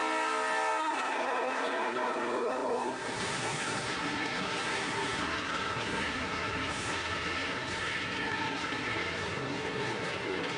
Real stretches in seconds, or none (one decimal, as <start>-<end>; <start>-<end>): 0.0-0.8